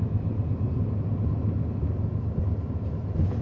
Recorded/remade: recorded